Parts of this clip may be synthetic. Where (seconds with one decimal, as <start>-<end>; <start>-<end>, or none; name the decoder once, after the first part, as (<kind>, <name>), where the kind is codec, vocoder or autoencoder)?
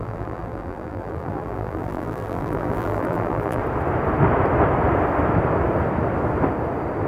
0.0-3.6 (vocoder, BigVGAN v2)